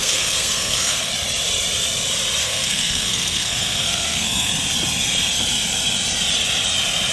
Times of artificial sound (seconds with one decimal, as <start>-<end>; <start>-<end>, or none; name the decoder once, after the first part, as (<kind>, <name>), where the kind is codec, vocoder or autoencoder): 0.0-1.1 (codec, SNAC); 2.4-4.5